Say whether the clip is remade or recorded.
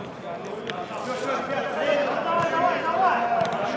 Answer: recorded